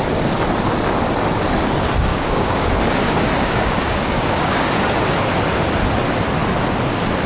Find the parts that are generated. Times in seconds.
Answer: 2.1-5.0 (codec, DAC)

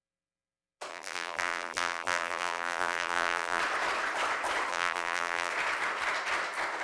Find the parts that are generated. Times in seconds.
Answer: 0.9-3.6 (vocoder, BigVGAN v2); 4.7-5.5

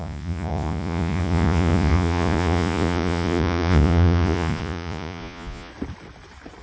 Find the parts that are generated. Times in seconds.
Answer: 0.0-5.7 (vocoder, Vocos)